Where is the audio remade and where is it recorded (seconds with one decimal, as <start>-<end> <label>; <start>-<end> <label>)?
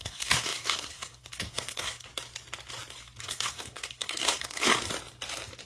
0.0-2.1 remade; 2.1-3.2 recorded; 3.2-4.7 remade; 4.7-5.6 recorded